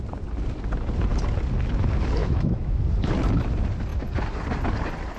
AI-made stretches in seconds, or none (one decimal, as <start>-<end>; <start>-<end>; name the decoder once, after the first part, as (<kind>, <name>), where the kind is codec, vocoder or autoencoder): 2.2-2.8 (autoencoder, DAC-VAE)